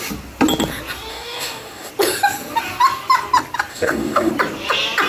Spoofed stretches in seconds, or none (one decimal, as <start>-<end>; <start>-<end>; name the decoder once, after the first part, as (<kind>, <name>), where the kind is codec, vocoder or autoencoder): 1.1-1.9 (codec, DAC); 3.7-4.3